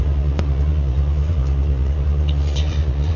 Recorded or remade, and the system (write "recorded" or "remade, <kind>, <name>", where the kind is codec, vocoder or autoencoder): remade, vocoder, Vocos